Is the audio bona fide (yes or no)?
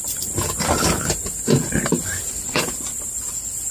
no